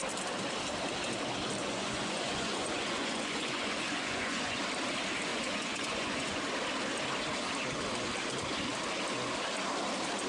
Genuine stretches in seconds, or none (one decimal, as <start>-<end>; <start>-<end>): 0.0-1.6; 4.6-5.3; 6.4-10.3